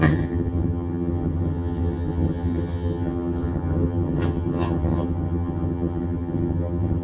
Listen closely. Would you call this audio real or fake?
fake